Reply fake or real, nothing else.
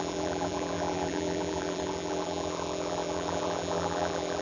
fake